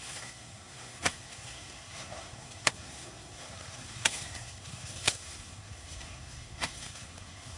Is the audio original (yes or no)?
no